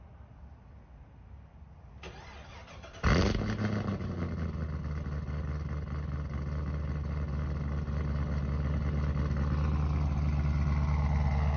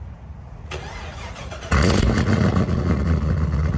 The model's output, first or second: second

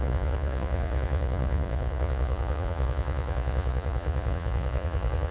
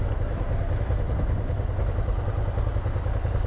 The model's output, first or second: first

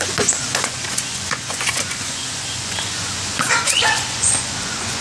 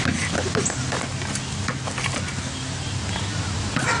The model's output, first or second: first